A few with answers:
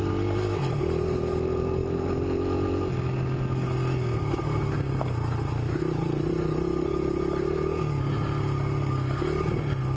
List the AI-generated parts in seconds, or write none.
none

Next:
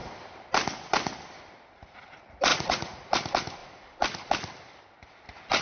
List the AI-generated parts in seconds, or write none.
2.5-3.1 (vocoder, Vocos)

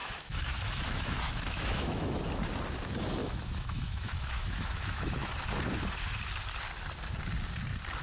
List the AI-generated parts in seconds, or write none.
0.0-2.2 (autoencoder, DAC-VAE); 3.2-5.3

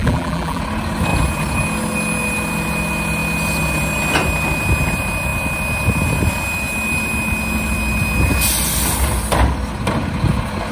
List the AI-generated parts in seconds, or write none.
0.0-0.6 (vocoder, BigVGAN v2)

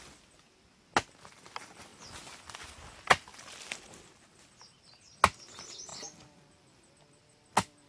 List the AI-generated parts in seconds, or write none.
1.9-2.6 (vocoder, BigVGAN v2); 3.3-4.2; 5.9-6.9

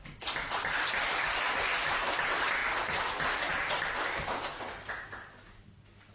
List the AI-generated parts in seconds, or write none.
none